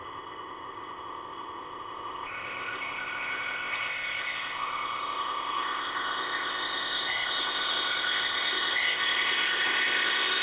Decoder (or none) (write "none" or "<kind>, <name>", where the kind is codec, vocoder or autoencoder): codec, ZipCodec